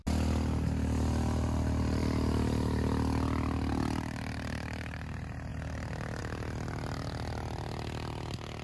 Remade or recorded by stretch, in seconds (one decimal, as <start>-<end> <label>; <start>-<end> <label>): 0.0-8.6 recorded